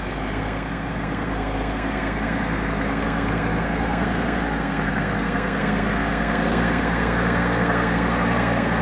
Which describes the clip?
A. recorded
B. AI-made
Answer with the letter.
B